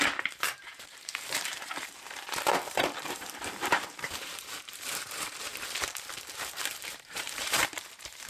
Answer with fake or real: fake